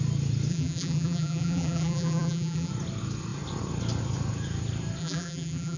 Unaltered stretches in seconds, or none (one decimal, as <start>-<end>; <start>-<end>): 0.0-0.5; 2.7-5.0